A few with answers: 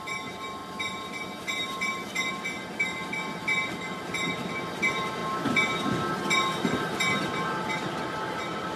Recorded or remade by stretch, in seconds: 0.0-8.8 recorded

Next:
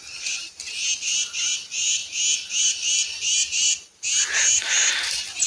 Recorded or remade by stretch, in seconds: 0.0-5.5 recorded

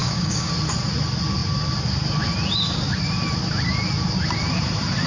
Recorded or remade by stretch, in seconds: 0.0-0.5 remade; 0.5-5.1 recorded

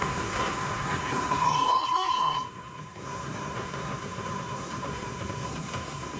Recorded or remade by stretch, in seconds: 0.0-6.2 remade